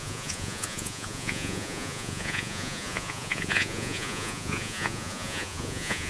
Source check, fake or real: fake